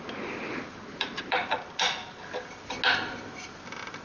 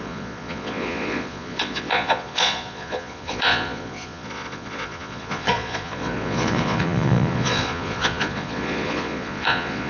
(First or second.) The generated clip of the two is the second